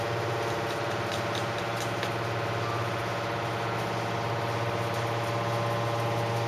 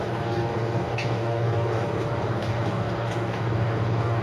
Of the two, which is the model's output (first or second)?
second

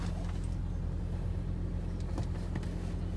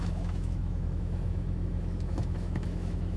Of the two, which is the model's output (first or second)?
second